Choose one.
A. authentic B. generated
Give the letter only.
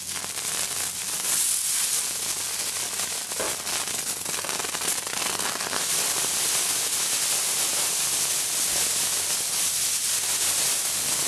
A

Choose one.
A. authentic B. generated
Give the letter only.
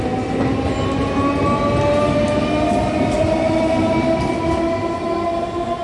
A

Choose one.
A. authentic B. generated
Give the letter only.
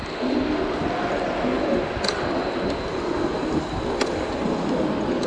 A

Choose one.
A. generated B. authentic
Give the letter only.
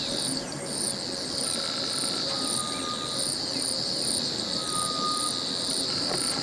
B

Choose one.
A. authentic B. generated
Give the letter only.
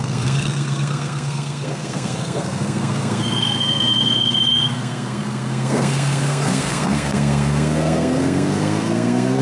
B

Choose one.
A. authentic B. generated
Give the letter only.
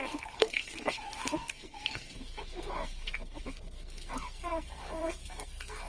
B